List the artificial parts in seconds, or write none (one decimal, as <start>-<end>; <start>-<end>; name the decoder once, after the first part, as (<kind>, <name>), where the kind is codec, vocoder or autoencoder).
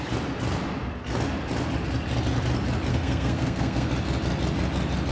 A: 2.9-3.9 (codec, SNAC)